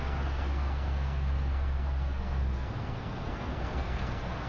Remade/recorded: remade